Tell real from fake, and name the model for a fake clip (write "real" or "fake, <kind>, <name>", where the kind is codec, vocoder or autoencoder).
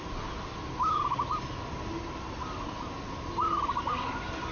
real